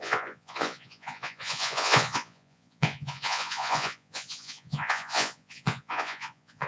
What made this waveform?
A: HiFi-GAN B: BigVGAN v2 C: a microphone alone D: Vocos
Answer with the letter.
D